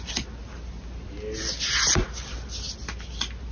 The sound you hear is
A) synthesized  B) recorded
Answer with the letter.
B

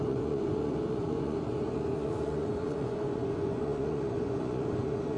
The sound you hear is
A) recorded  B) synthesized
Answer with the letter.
B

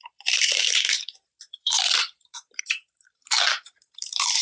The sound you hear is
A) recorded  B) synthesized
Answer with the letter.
B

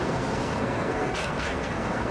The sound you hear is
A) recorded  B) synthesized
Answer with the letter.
B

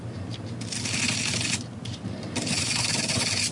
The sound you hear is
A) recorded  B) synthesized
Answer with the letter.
A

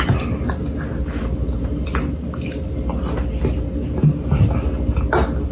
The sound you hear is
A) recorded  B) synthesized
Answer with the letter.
A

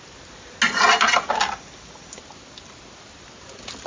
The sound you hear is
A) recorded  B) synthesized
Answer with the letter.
A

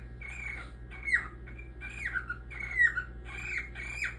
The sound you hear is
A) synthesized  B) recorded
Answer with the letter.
B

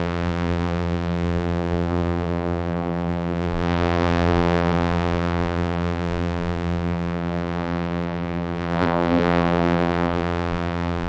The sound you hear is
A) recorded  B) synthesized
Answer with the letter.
B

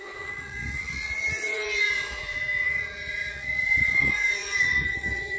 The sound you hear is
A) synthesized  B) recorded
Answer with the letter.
A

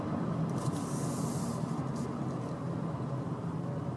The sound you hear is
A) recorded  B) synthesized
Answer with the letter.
A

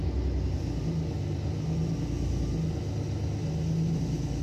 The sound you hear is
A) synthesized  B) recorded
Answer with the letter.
B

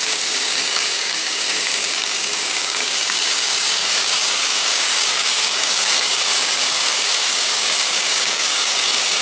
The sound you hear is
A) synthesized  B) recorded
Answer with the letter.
A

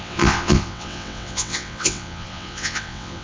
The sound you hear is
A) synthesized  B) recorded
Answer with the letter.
A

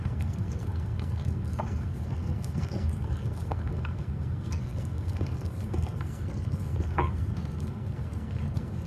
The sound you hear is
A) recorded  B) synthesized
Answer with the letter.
B